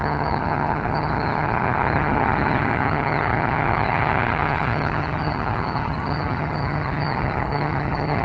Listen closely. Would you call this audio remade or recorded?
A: remade